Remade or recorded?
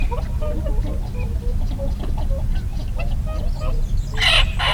recorded